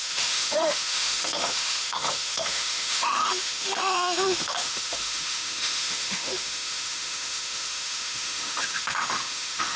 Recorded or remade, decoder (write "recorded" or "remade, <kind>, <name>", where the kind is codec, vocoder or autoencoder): remade, autoencoder, DAC-VAE